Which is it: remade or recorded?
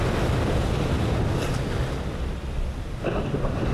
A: recorded